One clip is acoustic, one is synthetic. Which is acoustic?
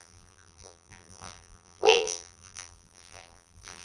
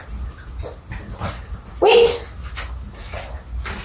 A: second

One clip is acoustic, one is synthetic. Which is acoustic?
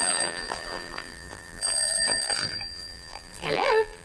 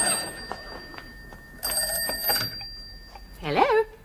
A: second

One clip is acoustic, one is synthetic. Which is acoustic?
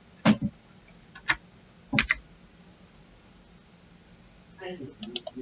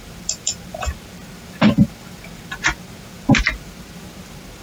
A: first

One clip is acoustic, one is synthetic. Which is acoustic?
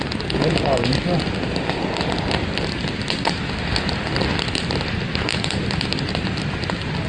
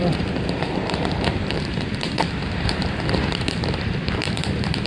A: first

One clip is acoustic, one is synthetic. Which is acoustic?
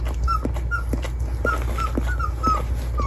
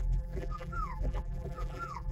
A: first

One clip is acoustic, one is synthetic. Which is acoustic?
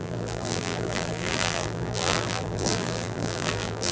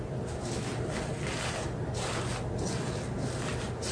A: second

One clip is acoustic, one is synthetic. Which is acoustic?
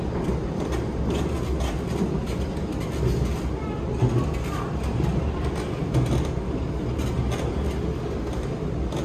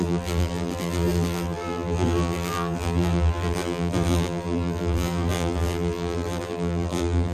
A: first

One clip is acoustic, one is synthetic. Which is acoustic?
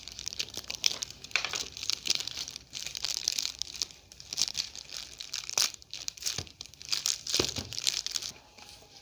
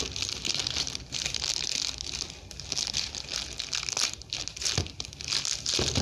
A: second